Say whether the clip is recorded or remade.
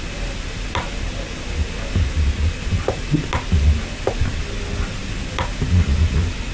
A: recorded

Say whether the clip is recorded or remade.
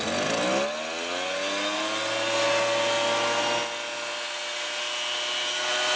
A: recorded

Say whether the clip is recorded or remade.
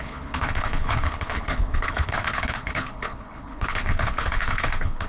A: remade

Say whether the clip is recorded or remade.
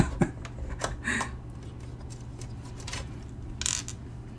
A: recorded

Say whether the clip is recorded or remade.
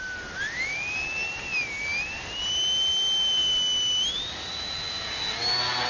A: recorded